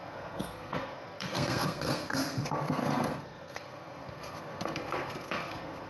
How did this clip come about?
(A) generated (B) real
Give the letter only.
A